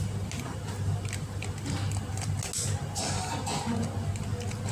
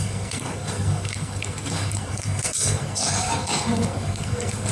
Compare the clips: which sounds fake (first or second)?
second